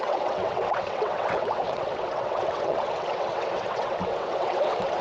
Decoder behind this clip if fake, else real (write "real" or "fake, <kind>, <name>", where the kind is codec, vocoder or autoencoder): fake, vocoder, WaveNeXt